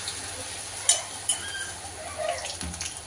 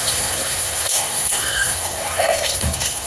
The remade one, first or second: second